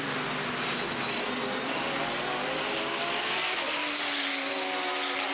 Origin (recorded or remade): recorded